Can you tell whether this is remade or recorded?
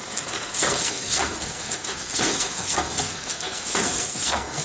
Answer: remade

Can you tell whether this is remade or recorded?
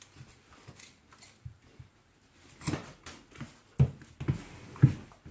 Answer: recorded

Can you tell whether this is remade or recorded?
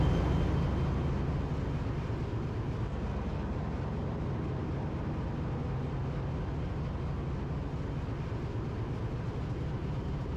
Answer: recorded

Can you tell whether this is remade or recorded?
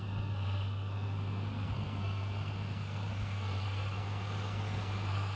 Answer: remade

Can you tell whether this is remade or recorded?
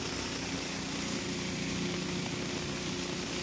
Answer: recorded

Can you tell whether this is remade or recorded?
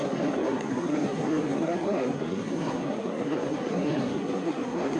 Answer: remade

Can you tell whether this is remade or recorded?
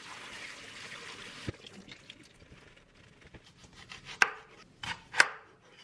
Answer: recorded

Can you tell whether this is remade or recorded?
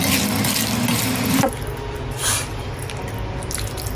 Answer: recorded